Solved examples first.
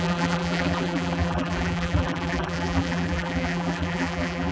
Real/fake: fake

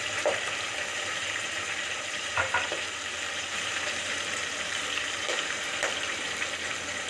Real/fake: fake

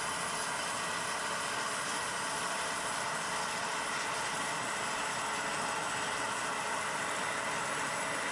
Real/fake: real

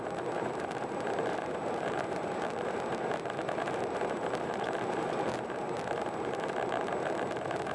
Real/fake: fake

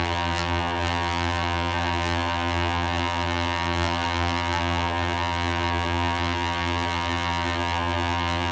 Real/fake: fake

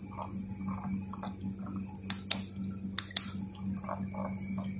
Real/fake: real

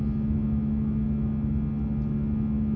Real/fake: real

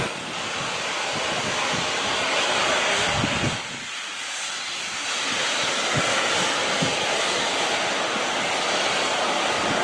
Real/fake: real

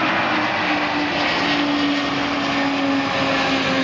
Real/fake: real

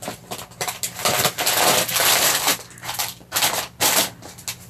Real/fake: real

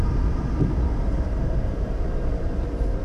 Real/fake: fake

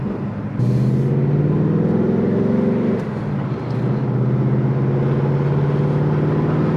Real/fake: real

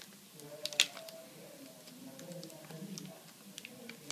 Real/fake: real